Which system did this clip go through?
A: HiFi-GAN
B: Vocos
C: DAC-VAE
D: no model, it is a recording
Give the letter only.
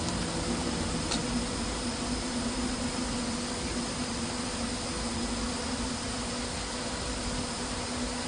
D